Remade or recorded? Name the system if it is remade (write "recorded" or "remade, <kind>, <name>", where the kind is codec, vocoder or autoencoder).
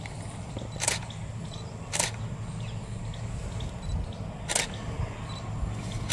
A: recorded